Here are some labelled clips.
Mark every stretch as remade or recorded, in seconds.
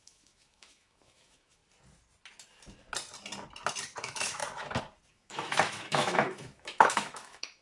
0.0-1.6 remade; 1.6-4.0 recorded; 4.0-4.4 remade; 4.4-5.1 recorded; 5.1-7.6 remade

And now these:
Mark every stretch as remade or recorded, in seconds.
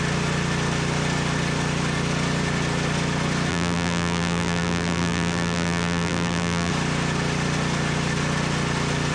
0.0-3.5 recorded; 3.5-6.7 remade; 6.7-9.1 recorded